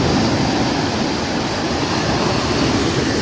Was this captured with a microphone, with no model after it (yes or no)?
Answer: no